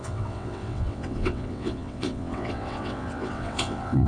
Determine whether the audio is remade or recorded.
remade